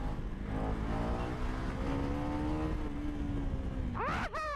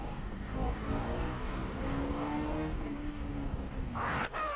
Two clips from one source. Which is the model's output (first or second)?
second